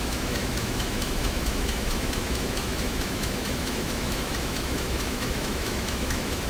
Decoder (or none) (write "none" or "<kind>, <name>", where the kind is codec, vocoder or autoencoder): autoencoder, DAC-VAE